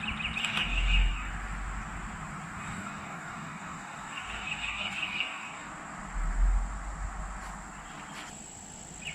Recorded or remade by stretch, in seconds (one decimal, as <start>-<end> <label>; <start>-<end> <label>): 0.0-0.4 recorded; 0.4-1.3 remade; 1.3-2.6 recorded; 2.6-5.7 remade; 5.7-9.1 recorded

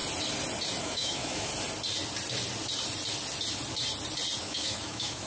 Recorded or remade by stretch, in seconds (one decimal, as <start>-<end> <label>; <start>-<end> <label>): 0.0-0.8 recorded; 0.8-1.5 remade; 1.5-4.4 recorded; 4.4-5.3 remade

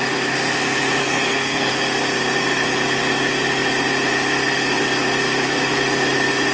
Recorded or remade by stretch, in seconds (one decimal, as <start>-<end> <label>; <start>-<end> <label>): 0.0-1.0 recorded; 1.0-1.7 remade; 1.7-6.5 recorded

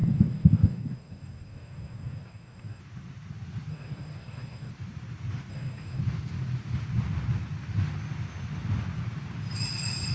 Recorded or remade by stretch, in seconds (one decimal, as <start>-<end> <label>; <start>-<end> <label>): 0.0-2.8 remade; 2.8-3.7 recorded; 3.7-4.7 remade; 4.7-5.5 recorded; 5.5-6.0 remade; 6.0-10.1 recorded

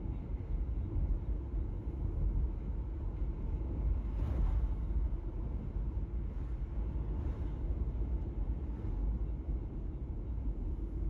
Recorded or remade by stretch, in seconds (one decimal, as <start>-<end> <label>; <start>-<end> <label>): 0.0-9.2 recorded; 9.2-10.1 remade; 10.1-11.1 recorded

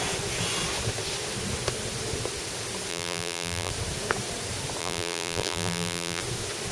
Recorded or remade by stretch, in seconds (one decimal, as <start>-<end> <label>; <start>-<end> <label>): 0.0-2.9 recorded; 2.9-3.7 remade; 3.7-4.8 recorded; 4.8-6.2 remade; 6.2-6.7 recorded

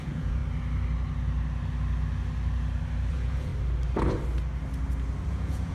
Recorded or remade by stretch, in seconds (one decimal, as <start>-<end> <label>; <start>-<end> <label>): 0.0-0.4 remade; 0.4-3.1 recorded; 3.1-3.5 remade; 3.5-5.3 recorded; 5.3-5.7 remade